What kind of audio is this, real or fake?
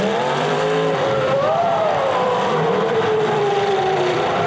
fake